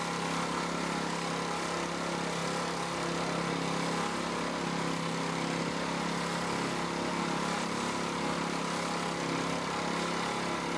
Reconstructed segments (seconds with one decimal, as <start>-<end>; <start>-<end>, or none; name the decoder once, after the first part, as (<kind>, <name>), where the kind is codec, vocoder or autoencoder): none